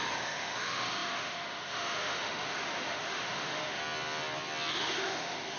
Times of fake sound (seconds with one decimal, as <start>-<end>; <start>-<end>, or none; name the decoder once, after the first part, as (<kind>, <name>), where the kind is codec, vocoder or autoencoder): 0.0-3.8 (autoencoder, DAC-VAE); 4.7-5.6